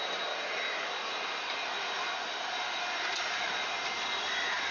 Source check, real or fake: real